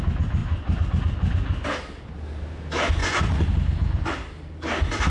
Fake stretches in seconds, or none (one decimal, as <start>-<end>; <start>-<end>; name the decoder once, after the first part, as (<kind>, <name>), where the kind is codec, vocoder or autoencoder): 3.0-3.5 (vocoder, Vocos)